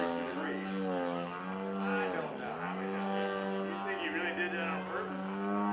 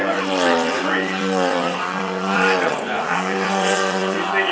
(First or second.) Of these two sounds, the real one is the first